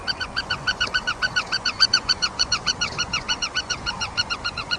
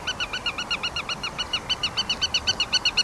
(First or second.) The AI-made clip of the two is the first